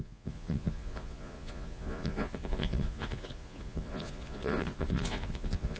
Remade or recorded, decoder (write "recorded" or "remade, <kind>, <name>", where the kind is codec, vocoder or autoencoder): remade, vocoder, Vocos